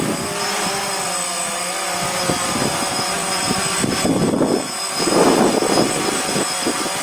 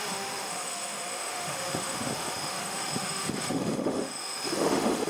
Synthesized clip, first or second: second